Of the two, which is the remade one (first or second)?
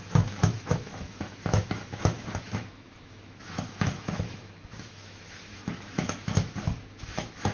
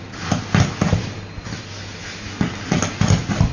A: first